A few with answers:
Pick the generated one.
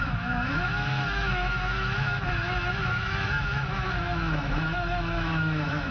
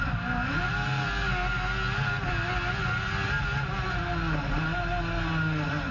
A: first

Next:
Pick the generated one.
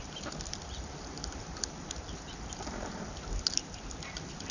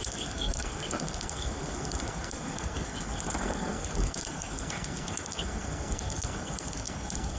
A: second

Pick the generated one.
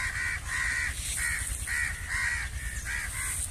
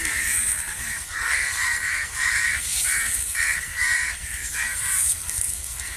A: second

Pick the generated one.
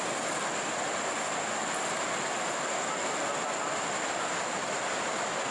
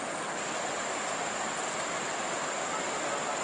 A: second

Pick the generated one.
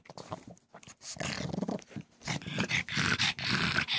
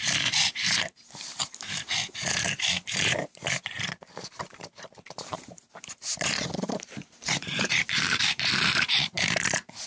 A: second